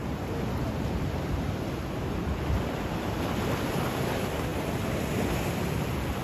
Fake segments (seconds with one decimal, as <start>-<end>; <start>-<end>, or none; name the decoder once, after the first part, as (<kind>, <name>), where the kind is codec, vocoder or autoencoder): 3.7-4.5 (vocoder, BigVGAN v2); 5.4-6.2

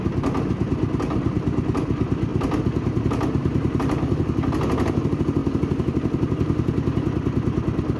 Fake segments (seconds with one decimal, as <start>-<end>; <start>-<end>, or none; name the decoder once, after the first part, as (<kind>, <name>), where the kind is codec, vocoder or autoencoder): 3.4-4.2 (vocoder, BigVGAN v2)